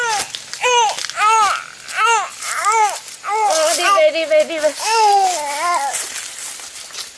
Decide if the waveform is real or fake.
real